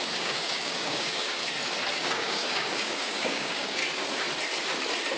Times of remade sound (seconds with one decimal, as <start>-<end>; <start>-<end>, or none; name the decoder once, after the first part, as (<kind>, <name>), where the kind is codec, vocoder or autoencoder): 0.0-1.4 (codec, DAC); 1.9-3.8